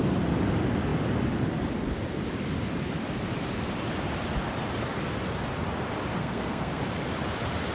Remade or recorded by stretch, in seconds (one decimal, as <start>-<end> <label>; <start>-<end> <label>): 0.0-6.2 recorded; 6.2-6.8 remade; 6.8-7.7 recorded